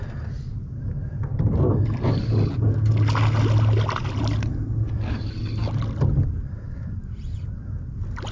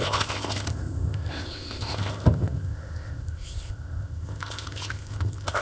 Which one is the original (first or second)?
first